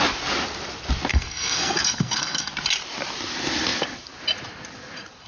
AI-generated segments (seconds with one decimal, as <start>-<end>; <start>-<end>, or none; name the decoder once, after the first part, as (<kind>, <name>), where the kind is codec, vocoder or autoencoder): 1.1-2.5 (codec, SNAC)

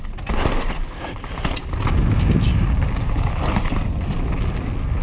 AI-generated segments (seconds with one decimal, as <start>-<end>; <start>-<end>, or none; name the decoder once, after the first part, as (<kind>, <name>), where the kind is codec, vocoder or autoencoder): none

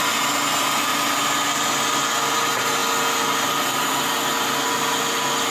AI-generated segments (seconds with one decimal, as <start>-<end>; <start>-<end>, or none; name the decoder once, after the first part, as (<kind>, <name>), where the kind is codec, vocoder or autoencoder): none

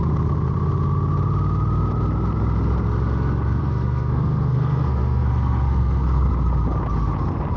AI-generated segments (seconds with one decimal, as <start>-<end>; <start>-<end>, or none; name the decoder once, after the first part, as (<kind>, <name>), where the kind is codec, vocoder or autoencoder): 3.6-6.3 (codec, SNAC)

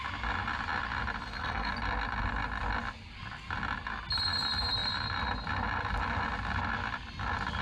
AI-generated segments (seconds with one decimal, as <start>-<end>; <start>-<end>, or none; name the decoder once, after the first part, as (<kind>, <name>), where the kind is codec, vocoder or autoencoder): 1.2-1.7 (codec, SNAC)

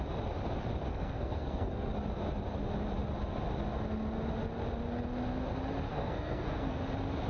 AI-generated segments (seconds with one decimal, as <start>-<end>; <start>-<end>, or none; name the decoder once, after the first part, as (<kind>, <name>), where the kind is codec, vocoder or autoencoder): 0.9-1.9 (codec, SNAC); 5.9-6.8

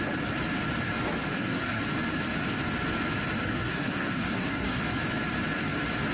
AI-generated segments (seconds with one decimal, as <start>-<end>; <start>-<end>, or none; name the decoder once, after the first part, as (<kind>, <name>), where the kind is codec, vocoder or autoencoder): 1.3-1.8 (codec, SNAC); 3.4-4.8